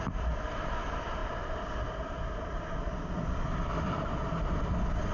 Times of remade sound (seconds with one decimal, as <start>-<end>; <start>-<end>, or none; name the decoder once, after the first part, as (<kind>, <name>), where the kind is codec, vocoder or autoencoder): none